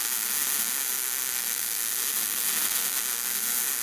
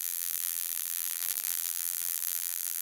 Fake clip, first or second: second